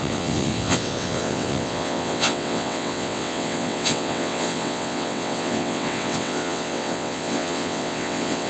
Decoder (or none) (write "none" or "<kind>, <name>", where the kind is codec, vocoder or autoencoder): vocoder, WaveNeXt